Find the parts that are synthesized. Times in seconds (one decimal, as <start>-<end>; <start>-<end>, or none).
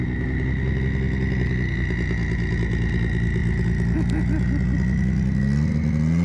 none